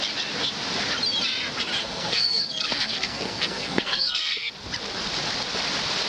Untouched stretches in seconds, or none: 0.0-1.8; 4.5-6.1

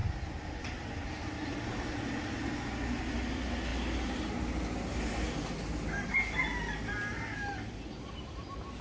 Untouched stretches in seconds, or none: 0.0-8.8

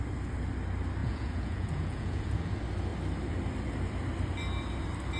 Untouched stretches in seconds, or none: 0.0-1.0; 2.5-5.2

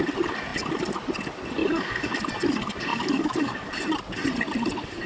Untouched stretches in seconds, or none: 0.0-1.6; 2.1-2.9; 3.7-5.1

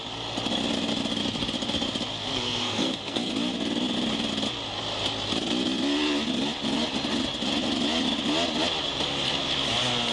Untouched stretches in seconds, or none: 0.0-2.3; 3.3-10.1

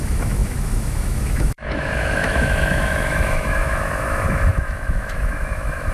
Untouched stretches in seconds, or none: none

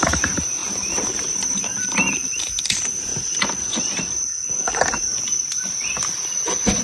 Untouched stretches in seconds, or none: 3.1-5.6